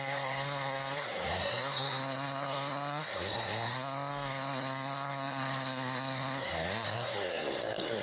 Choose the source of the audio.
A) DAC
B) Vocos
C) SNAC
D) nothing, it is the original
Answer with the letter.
C